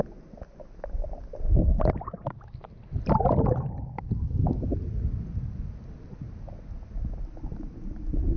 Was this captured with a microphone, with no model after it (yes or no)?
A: yes